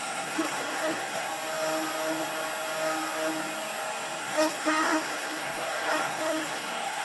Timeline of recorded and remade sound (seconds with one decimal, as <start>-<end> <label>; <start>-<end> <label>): 0.0-1.3 remade; 1.3-4.2 recorded; 4.2-7.0 remade